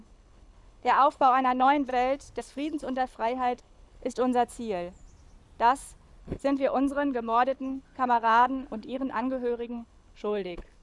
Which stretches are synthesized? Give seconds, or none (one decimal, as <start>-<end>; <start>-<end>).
0.0-1.9; 2.4-4.2; 6.2-10.8